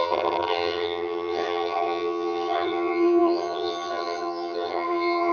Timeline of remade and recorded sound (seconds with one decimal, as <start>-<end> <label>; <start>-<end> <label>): 0.0-5.3 remade